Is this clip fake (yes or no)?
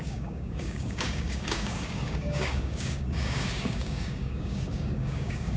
yes